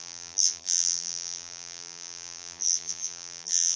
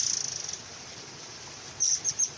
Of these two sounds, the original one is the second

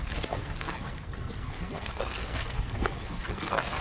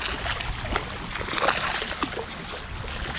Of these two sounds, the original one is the second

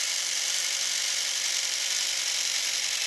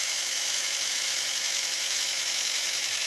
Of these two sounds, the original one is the first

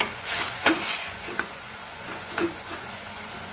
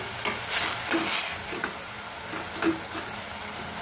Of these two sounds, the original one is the second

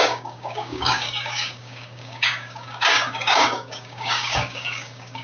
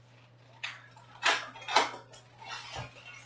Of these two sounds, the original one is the second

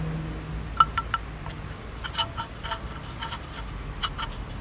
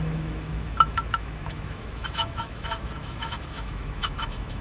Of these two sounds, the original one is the first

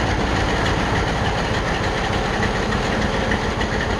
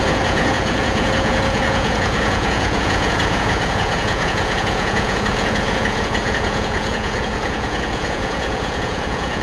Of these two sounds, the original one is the first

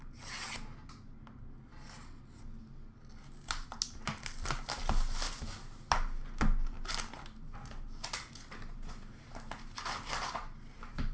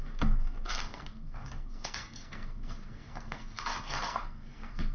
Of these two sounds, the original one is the first